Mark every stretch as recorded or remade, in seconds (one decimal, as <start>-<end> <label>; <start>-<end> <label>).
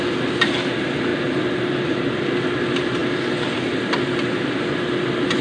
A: 0.0-5.4 recorded